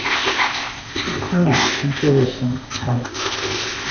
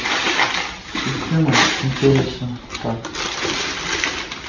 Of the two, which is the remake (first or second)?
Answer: first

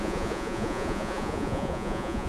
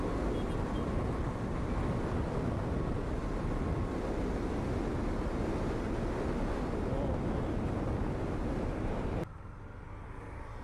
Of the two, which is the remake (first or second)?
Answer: first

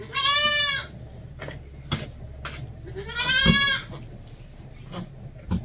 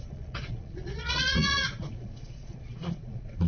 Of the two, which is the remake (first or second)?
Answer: second